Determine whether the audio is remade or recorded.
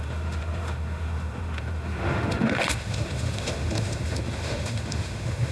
remade